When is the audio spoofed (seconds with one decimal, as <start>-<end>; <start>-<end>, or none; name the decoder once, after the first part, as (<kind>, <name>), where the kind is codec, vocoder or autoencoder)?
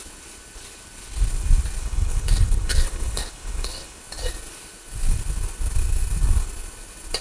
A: 1.8-4.0 (codec, HILCodec)